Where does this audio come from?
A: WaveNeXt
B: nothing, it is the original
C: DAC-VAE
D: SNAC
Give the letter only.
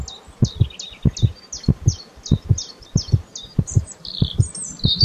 B